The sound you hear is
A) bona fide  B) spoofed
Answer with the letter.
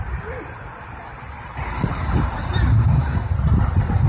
A